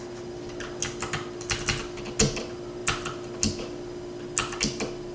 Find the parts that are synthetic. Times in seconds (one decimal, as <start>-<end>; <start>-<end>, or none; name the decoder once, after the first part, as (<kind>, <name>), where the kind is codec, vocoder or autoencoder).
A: none